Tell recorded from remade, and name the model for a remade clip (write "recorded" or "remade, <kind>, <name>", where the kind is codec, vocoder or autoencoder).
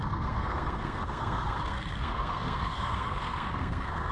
remade, codec, SNAC